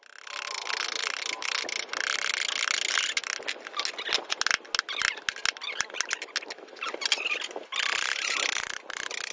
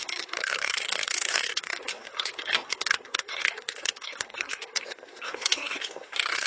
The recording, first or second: first